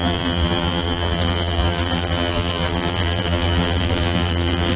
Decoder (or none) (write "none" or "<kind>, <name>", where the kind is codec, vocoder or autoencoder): vocoder, BigVGAN v2